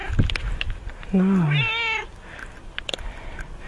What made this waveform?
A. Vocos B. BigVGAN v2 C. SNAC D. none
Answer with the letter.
D